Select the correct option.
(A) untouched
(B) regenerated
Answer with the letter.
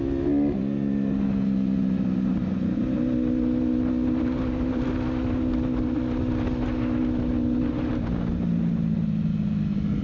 A